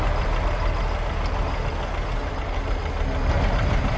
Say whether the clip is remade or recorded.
recorded